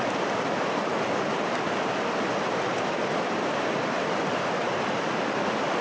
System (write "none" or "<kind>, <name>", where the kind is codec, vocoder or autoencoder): vocoder, BigVGAN v2